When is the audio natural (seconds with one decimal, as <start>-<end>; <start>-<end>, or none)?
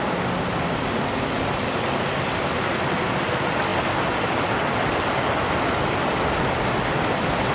0.0-7.5